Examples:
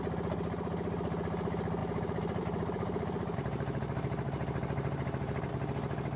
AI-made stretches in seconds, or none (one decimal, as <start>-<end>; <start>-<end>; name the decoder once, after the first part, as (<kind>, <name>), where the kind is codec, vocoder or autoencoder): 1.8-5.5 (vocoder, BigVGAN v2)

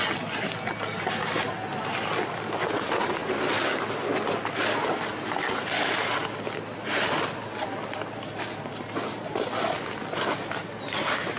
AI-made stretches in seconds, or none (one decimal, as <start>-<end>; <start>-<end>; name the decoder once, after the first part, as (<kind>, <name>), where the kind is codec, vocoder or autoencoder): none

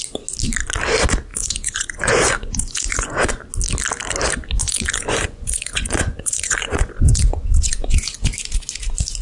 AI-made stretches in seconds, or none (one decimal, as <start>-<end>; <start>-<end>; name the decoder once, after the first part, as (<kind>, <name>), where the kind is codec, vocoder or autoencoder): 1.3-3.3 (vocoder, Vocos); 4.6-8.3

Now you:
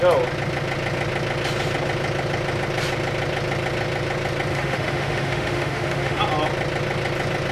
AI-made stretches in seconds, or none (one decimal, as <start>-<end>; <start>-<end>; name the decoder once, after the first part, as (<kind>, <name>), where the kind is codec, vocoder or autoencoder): 4.5-6.2 (autoencoder, DAC-VAE)

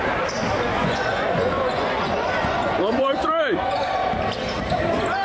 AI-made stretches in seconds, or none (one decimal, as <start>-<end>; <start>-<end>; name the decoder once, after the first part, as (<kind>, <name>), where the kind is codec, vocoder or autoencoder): 0.7-3.8 (vocoder, Vocos)